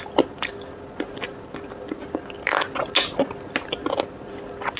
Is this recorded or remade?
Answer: recorded